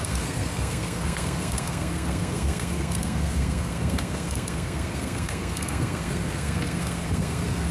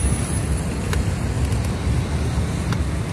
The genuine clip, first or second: second